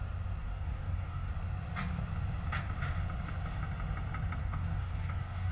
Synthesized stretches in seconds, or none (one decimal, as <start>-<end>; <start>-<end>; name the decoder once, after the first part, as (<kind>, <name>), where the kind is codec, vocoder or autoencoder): 0.4-1.3 (codec, DAC); 4.4-5.5